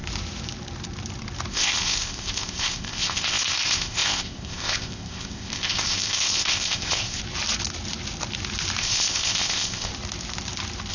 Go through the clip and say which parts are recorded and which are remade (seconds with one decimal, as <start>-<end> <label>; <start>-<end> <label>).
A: 0.0-1.5 recorded; 1.5-7.2 remade; 7.2-8.8 recorded; 8.8-9.9 remade; 9.9-10.9 recorded